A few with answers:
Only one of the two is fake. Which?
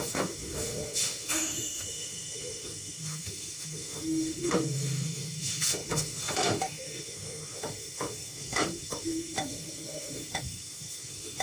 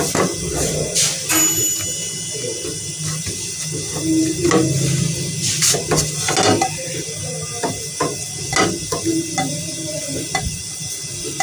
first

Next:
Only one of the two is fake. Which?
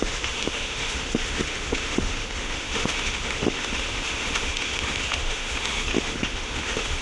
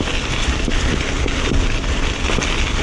first